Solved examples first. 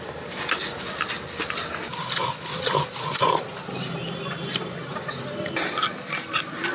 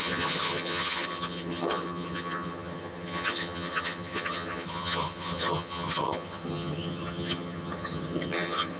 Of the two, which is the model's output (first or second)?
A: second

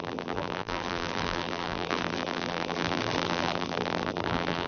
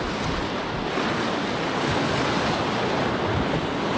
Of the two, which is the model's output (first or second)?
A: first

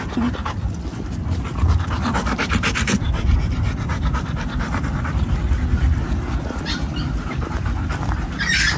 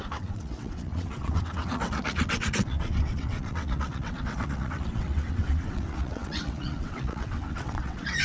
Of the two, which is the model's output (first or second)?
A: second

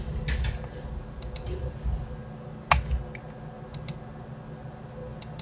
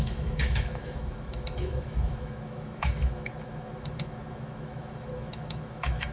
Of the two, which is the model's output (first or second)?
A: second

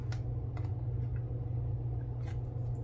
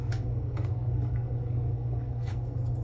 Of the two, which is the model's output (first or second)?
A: second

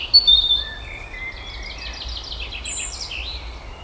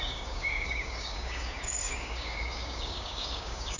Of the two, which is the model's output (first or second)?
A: second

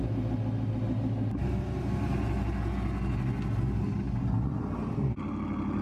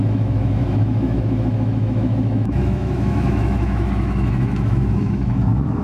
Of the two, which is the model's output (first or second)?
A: second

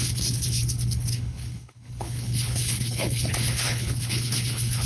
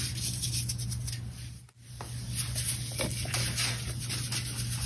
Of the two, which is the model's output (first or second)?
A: first